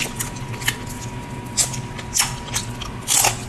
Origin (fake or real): real